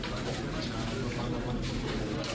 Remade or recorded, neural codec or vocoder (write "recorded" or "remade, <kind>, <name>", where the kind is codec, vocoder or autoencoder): recorded